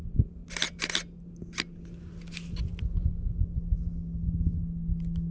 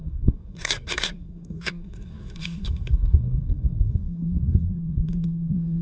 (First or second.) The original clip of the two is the first